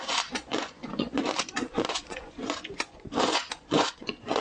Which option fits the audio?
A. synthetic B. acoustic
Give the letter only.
A